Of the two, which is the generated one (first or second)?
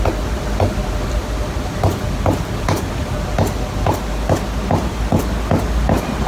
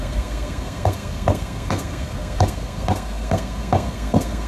second